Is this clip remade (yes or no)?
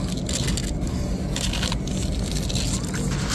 no